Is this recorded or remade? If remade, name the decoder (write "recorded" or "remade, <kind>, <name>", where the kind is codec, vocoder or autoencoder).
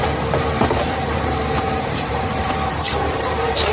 remade, vocoder, BigVGAN v2